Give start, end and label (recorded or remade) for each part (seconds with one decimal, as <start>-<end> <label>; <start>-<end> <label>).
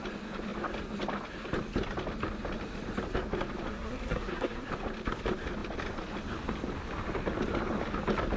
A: 0.0-3.7 recorded; 3.7-4.7 remade; 4.7-8.4 recorded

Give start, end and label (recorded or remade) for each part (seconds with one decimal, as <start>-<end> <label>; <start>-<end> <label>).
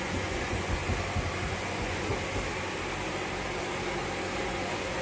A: 0.0-0.8 remade; 0.8-1.5 recorded; 1.5-2.1 remade; 2.1-4.4 recorded; 4.4-5.0 remade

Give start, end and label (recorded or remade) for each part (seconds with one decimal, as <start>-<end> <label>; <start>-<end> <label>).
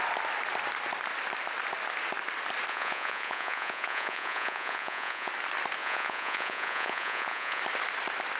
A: 0.0-2.7 recorded; 2.7-5.3 remade; 5.3-5.8 recorded; 5.8-7.6 remade; 7.6-8.4 recorded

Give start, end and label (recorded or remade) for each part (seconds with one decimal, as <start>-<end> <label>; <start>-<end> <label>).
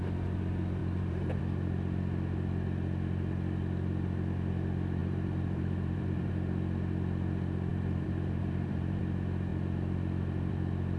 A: 0.0-0.8 recorded; 0.8-1.4 remade; 1.4-5.0 recorded; 5.0-6.3 remade; 6.3-7.7 recorded; 7.7-9.0 remade; 9.0-11.0 recorded